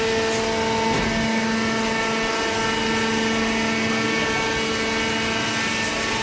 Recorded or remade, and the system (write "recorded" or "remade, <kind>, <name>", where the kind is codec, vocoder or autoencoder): recorded